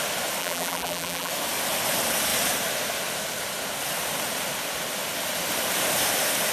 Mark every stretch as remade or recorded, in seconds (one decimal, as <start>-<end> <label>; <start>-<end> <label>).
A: 0.0-0.4 recorded; 0.4-1.3 remade; 1.3-6.5 recorded